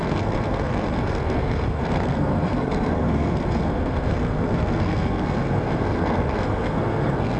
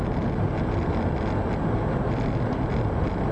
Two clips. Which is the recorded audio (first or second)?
second